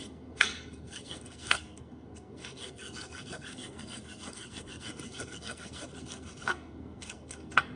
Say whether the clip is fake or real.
fake